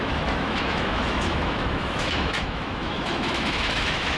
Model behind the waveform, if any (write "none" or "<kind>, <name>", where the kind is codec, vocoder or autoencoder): autoencoder, DAC-VAE